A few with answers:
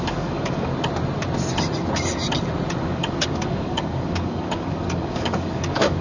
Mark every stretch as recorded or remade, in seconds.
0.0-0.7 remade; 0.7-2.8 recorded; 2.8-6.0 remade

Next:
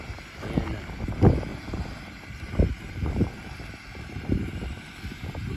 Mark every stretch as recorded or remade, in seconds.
0.0-1.5 recorded; 1.5-2.0 remade; 2.0-2.7 recorded; 2.7-3.4 remade; 3.4-3.9 recorded; 3.9-4.5 remade; 4.5-5.6 recorded

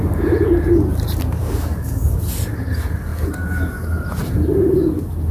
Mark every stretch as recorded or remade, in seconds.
0.0-1.4 recorded; 1.4-2.2 remade; 2.2-5.3 recorded

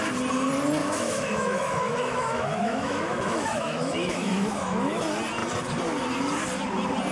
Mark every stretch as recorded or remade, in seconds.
0.0-0.8 recorded; 0.8-5.0 remade; 5.0-7.1 recorded